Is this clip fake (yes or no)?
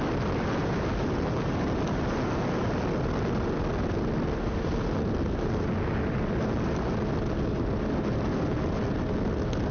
no